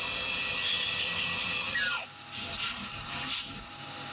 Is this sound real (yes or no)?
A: yes